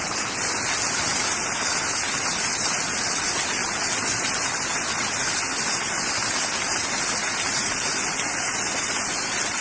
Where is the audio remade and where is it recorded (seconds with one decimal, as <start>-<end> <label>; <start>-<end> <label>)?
0.0-9.6 recorded